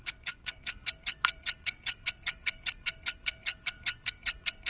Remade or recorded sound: remade